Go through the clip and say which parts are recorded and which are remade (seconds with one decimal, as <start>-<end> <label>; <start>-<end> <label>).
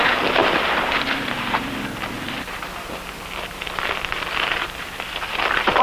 0.0-5.8 remade